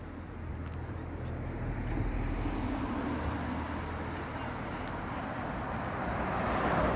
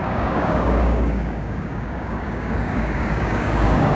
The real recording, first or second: first